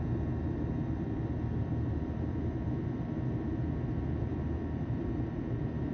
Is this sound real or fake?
fake